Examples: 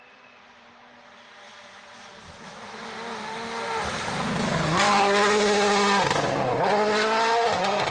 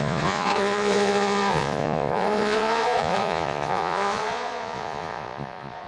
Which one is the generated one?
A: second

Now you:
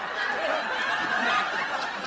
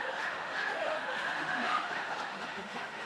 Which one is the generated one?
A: second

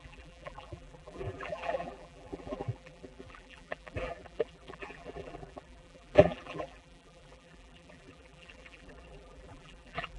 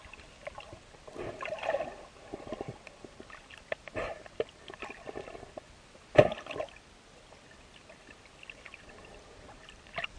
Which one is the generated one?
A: first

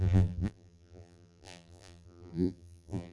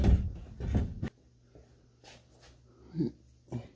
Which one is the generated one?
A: first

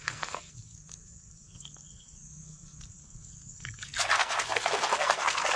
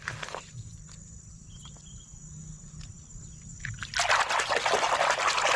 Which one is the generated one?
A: first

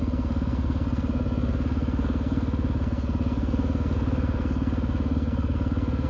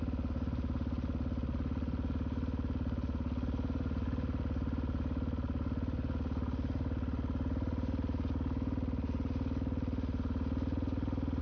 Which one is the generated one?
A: first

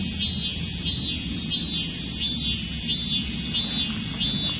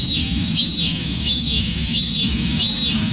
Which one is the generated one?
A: second